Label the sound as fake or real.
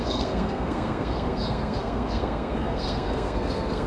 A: fake